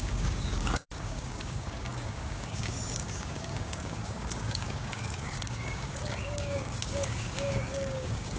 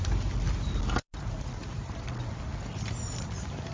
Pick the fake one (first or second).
first